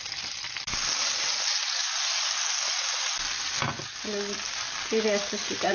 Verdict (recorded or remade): recorded